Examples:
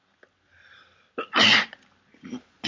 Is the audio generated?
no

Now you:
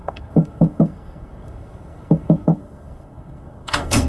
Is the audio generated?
yes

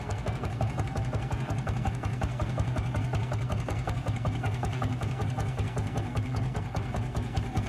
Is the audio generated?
yes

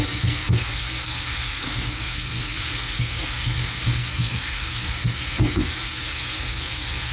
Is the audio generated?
yes